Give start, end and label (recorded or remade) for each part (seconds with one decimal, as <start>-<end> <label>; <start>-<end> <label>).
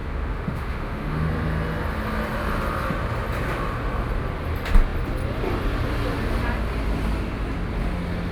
0.0-1.3 remade; 1.3-8.3 recorded